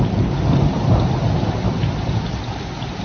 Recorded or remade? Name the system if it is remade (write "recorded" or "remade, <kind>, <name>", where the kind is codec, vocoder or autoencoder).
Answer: recorded